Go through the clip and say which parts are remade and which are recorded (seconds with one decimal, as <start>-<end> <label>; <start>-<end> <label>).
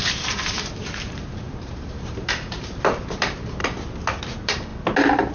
0.0-3.6 remade; 3.6-4.2 recorded; 4.2-4.7 remade; 4.7-5.3 recorded